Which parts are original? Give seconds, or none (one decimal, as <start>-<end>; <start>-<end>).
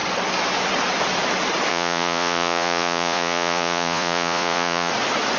0.0-1.7; 4.9-5.4